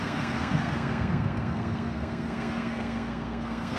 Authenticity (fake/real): fake